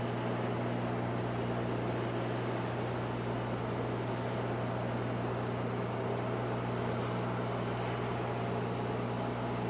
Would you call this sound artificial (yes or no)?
no